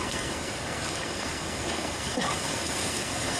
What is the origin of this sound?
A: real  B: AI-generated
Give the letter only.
B